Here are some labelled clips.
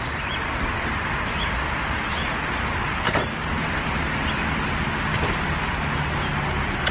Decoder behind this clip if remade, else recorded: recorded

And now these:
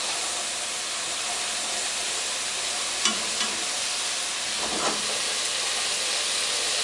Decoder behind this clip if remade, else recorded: recorded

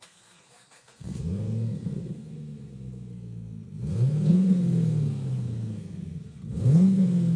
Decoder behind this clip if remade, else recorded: remade, codec, SNAC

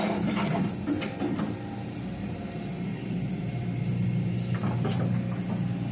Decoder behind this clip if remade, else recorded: recorded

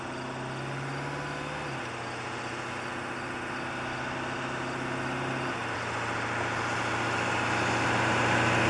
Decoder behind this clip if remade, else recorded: recorded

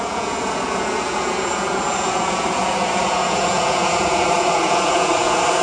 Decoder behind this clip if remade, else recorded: remade, vocoder, Vocos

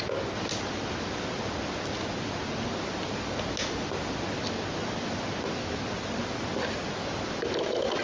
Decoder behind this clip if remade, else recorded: recorded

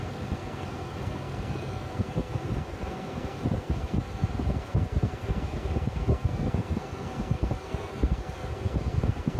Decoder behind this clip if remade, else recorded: remade, codec, SNAC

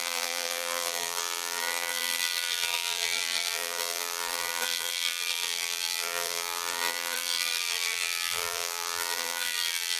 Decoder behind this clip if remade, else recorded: remade, vocoder, BigVGAN v2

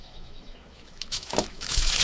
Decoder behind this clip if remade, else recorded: remade, autoencoder, DAC-VAE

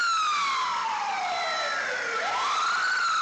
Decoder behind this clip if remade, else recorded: recorded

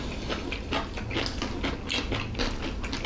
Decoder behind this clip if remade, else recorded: recorded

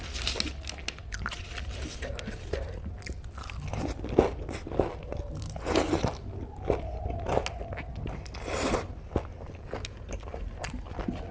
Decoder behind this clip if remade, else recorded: recorded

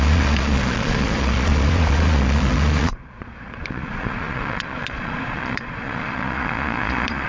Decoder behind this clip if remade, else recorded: remade, vocoder, Vocos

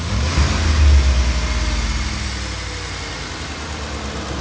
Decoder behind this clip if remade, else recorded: recorded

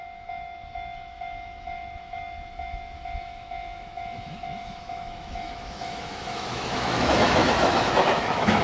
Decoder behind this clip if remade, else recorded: remade, autoencoder, DAC-VAE